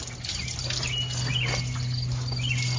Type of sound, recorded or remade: recorded